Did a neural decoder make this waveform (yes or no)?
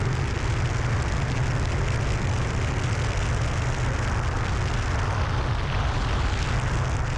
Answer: no